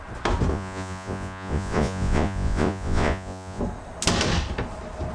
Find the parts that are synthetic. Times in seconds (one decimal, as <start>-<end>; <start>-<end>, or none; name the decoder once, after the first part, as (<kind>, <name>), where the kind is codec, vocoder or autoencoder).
0.5-3.6 (vocoder, Vocos)